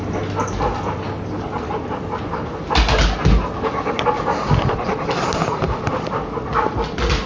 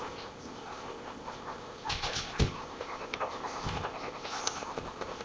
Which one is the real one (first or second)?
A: first